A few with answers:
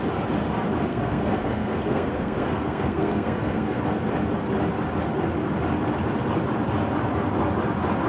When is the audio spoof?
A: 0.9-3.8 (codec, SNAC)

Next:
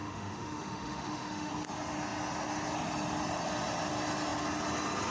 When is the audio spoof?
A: 0.0-1.5 (autoencoder, DAC-VAE)

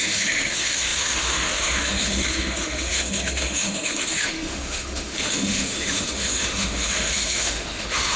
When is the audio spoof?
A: 0.0-8.2 (autoencoder, DAC-VAE)

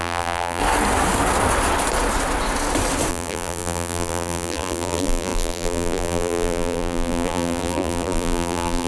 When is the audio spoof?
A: 0.0-0.6 (vocoder, BigVGAN v2); 3.1-8.9